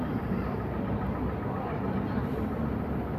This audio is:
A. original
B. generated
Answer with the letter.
B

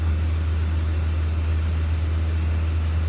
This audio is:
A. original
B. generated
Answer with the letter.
A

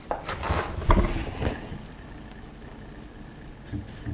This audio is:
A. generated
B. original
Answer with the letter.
B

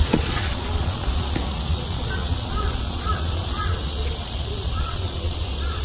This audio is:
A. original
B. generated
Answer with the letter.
B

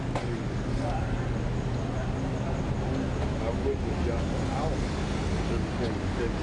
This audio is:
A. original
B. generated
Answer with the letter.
A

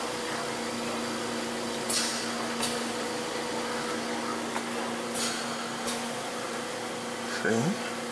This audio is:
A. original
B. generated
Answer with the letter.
A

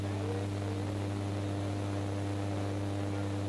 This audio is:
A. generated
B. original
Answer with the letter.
B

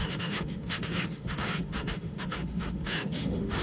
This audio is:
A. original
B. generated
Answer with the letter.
B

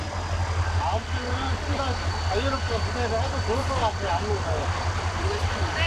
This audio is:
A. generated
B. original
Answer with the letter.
B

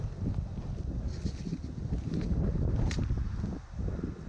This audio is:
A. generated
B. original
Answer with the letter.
B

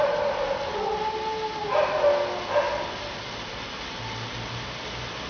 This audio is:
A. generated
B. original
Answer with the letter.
B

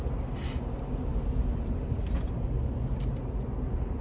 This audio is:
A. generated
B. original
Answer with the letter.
B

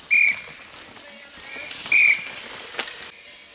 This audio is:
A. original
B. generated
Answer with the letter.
A